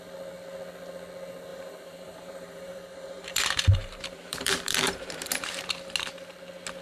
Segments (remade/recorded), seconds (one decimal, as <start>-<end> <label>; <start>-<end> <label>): 0.0-1.5 recorded; 1.5-5.6 remade; 5.6-6.8 recorded